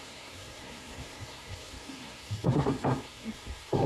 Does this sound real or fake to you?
fake